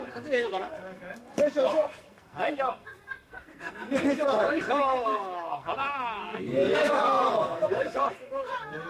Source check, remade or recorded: remade